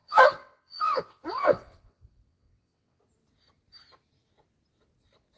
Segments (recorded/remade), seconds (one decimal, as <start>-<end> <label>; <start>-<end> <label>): 0.0-3.0 remade; 3.0-5.4 recorded